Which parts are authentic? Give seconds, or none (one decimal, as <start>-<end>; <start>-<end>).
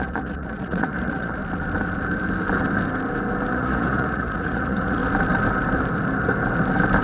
1.4-3.5; 5.0-7.0